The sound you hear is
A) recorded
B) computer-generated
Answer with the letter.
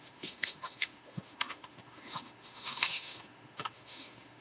B